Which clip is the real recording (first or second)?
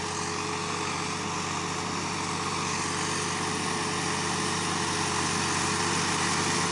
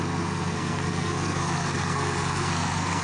first